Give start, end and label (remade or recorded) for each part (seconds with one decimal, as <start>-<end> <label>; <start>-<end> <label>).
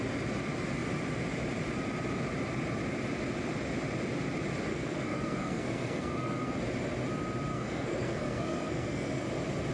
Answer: 0.0-4.7 recorded; 4.7-6.5 remade; 6.5-7.5 recorded; 7.5-9.2 remade; 9.2-9.7 recorded